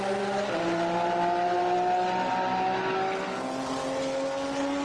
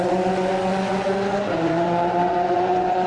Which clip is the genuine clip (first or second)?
first